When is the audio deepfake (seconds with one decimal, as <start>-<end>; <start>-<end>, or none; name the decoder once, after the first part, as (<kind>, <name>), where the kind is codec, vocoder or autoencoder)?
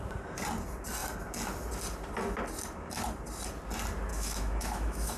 4.1-5.2 (autoencoder, DAC-VAE)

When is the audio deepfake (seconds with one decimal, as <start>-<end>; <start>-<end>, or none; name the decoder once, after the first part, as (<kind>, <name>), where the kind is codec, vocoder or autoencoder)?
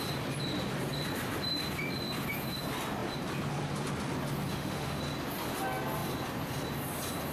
4.5-5.0 (autoencoder, DAC-VAE)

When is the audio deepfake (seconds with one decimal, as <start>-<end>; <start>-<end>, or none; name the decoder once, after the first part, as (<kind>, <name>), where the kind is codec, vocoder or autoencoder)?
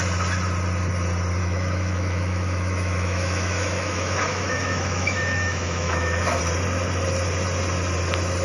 1.4-6.4 (autoencoder, DAC-VAE)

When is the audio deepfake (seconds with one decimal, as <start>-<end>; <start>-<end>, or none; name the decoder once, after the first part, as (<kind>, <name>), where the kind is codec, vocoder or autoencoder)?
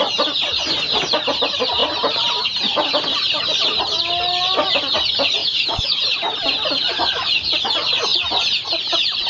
5.4-6.0 (autoencoder, DAC-VAE)